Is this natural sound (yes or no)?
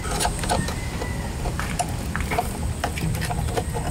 yes